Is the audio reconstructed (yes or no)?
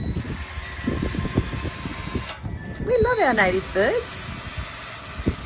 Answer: no